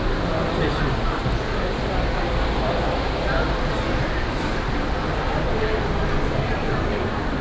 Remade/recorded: recorded